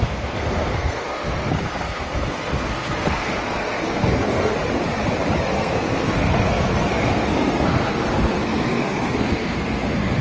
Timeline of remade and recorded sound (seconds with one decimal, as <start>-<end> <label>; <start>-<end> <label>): 0.0-4.5 remade; 4.5-5.4 recorded; 5.4-10.2 remade